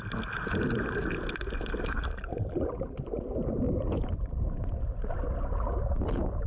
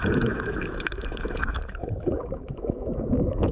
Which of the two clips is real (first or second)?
first